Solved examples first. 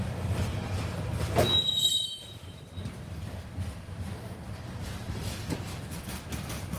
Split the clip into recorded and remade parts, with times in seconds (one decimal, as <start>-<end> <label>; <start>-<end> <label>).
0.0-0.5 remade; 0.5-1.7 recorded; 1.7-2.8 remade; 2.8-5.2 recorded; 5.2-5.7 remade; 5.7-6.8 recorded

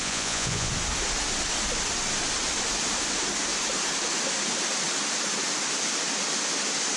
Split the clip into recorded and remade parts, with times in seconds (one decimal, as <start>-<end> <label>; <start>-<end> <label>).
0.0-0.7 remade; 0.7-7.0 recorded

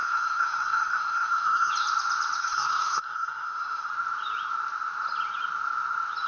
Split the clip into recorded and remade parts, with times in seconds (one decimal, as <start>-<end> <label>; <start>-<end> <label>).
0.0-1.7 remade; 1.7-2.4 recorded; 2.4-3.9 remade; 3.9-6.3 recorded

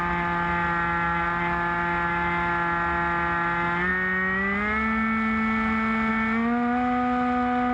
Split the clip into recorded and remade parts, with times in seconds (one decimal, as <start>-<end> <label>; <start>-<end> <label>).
0.0-7.7 recorded

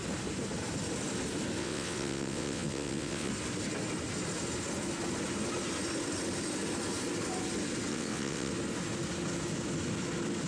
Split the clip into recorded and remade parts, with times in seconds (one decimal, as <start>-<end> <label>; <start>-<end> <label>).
0.0-1.6 recorded; 1.6-3.3 remade; 3.3-7.9 recorded; 7.9-8.5 remade; 8.5-10.5 recorded

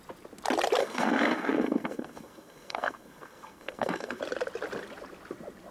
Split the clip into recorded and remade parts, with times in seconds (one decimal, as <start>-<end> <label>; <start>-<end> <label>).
0.0-0.8 recorded; 0.8-4.2 remade; 4.2-5.7 recorded